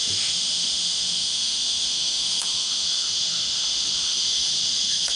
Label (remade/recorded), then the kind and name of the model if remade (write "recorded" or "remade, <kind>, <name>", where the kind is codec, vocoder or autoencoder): remade, autoencoder, DAC-VAE